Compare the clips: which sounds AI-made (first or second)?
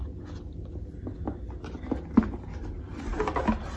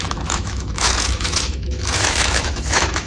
second